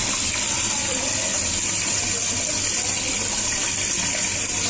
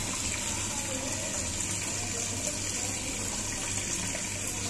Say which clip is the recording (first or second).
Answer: second